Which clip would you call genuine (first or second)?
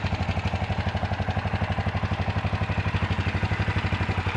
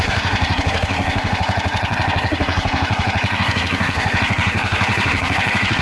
first